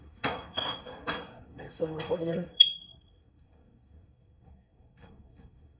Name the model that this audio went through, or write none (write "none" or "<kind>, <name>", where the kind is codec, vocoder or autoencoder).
codec, SNAC